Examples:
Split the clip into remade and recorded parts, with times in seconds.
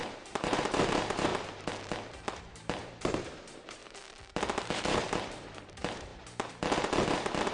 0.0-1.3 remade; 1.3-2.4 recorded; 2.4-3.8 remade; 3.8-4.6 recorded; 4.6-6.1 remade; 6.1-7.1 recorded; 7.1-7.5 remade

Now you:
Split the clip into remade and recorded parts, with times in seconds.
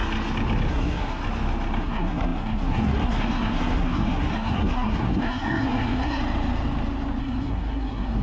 0.0-0.7 recorded; 0.7-1.2 remade; 1.2-1.8 recorded; 1.8-6.2 remade; 6.2-7.2 recorded; 7.2-8.2 remade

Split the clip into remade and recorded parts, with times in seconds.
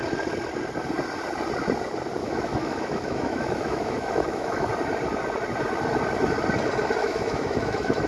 0.0-2.2 recorded; 2.2-4.7 remade; 4.7-7.0 recorded; 7.0-8.1 remade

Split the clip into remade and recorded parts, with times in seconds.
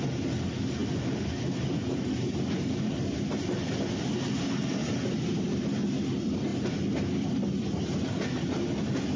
0.0-9.2 recorded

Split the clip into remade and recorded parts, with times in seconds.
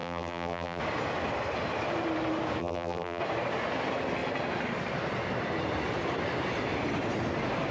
0.0-0.8 remade; 0.8-2.6 recorded; 2.6-3.2 remade; 3.2-7.7 recorded